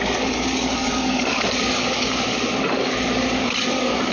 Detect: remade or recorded remade